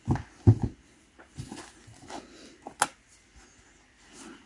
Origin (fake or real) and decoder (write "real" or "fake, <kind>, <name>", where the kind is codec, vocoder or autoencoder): real